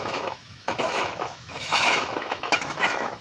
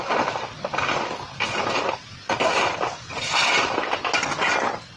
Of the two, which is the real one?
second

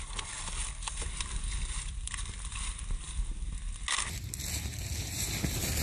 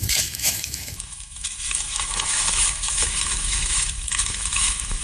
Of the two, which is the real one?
first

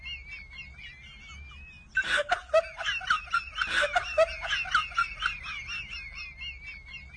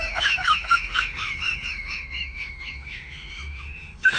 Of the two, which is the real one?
first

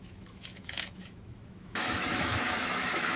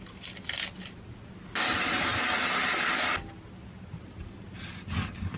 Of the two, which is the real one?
second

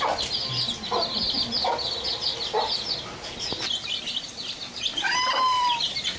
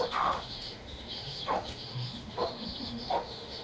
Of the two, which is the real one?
first